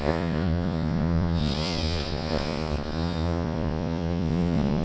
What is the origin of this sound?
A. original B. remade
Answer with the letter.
B